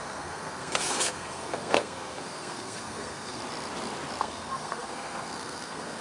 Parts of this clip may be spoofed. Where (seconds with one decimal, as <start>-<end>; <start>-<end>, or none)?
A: 0.0-3.4; 4.2-6.0